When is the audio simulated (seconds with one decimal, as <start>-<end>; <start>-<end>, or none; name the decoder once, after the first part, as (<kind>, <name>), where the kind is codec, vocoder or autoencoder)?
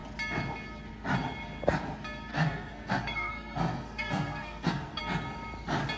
2.3-5.0 (codec, SNAC)